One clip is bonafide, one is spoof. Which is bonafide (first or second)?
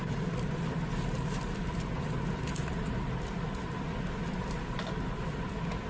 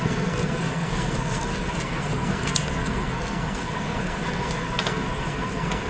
first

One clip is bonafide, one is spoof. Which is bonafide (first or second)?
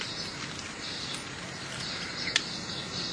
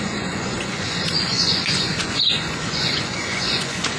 first